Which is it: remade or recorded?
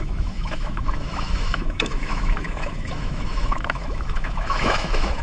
remade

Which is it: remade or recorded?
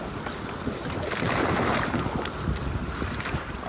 recorded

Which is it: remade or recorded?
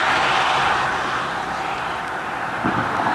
recorded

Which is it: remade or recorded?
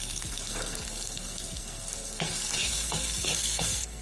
remade